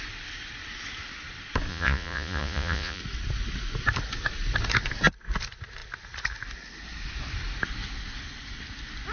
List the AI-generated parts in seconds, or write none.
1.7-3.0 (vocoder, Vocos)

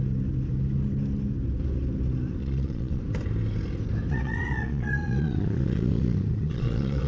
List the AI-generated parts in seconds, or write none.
2.4-3.0 (vocoder, Vocos); 4.1-7.1

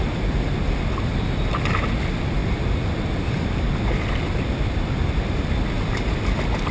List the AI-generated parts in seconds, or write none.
none

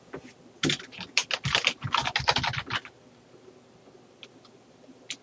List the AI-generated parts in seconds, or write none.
none

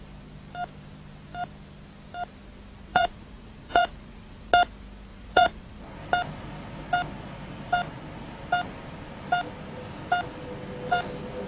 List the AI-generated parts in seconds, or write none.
2.9-4.5 (vocoder, Vocos); 5.1-5.8